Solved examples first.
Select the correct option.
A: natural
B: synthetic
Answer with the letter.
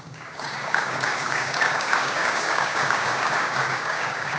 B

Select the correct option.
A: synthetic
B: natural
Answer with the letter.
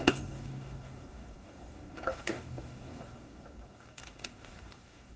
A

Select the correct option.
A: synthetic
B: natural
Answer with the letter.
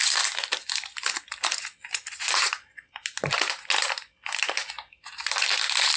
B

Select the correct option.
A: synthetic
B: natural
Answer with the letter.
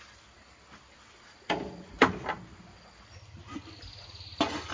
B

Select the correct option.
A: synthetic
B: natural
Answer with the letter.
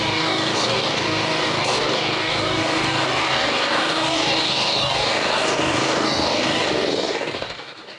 A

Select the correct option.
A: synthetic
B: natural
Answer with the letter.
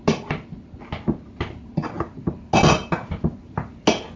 B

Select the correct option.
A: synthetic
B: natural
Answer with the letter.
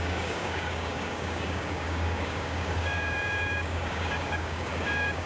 A